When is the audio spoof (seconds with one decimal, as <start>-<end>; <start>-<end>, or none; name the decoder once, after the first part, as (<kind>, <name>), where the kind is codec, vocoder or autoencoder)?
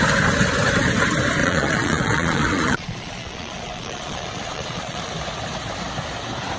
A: 1.4-5.1 (vocoder, Vocos)